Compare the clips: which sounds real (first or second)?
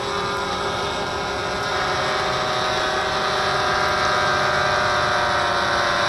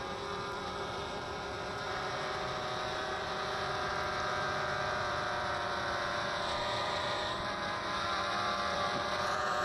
first